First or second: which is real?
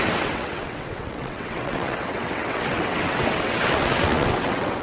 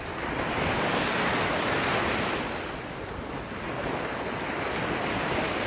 second